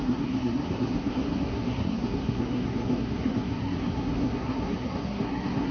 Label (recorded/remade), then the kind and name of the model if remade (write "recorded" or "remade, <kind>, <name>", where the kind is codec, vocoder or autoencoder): remade, codec, SNAC